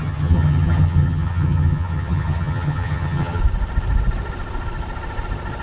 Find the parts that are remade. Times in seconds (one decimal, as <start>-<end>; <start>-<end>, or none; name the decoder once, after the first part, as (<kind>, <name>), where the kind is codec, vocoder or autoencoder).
0.0-3.4 (vocoder, HiFi-GAN)